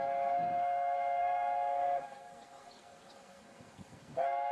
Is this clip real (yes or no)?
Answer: no